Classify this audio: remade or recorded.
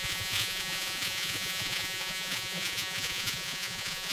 remade